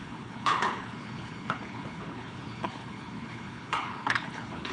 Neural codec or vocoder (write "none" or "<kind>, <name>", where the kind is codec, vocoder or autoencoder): codec, HILCodec